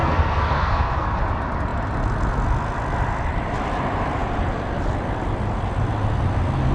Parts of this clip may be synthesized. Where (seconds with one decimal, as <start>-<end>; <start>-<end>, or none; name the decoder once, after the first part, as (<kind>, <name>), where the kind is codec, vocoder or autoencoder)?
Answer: 0.0-1.2 (codec, SNAC)